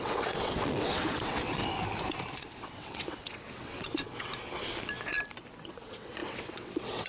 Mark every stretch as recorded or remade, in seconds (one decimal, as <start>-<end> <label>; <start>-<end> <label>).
0.0-1.6 remade; 1.6-2.3 recorded; 2.3-4.3 remade; 4.3-5.7 recorded; 5.7-7.1 remade